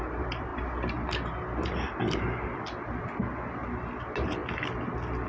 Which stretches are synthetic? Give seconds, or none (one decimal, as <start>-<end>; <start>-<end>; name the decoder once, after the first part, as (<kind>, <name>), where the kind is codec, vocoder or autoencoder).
none